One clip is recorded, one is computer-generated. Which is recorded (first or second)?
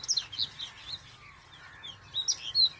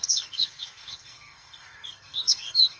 first